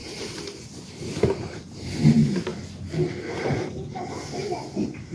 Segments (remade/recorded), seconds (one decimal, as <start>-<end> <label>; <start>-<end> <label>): 0.0-5.1 recorded